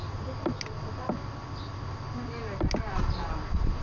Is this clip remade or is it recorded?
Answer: recorded